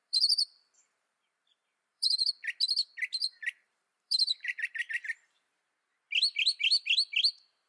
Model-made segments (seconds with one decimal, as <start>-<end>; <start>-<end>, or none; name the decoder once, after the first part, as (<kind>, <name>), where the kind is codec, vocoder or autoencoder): 0.0-2.3 (vocoder, BigVGAN v2); 3.2-5.5